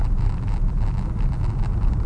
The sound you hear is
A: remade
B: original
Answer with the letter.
B